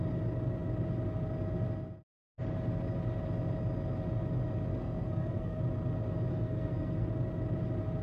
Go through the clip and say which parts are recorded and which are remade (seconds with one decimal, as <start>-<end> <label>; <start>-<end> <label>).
0.0-4.7 recorded; 4.7-5.6 remade; 5.6-6.3 recorded; 6.3-7.1 remade; 7.1-8.0 recorded